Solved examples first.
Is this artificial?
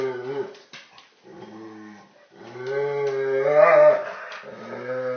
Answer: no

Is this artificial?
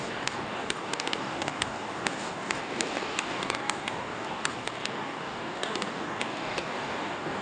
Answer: yes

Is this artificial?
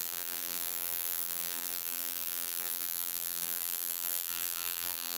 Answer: yes